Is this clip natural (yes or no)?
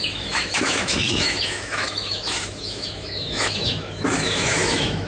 no